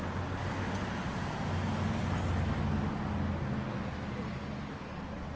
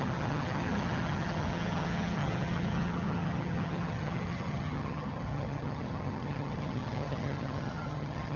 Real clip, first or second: first